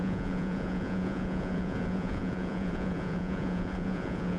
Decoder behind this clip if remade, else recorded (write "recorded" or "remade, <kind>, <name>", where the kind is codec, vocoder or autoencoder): remade, vocoder, Vocos